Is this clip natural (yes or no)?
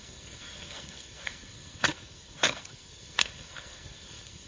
no